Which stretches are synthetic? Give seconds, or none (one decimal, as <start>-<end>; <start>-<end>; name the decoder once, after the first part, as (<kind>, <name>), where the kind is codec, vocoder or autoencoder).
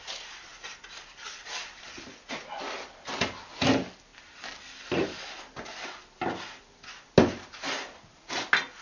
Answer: none